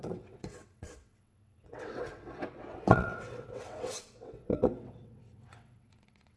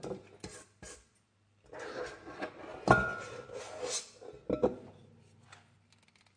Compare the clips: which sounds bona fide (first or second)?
second